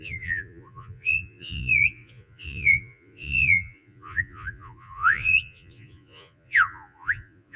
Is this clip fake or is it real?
fake